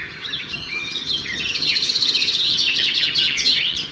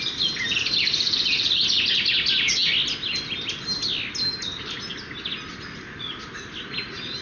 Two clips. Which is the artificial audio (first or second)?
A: first